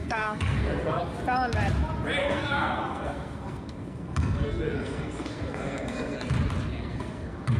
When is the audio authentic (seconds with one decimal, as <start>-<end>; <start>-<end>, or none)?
1.0-2.2; 6.3-6.7